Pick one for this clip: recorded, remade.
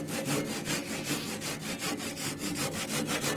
recorded